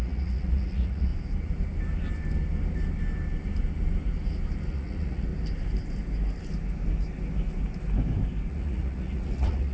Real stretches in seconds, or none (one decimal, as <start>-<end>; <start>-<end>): 1.1-4.7; 5.3-8.5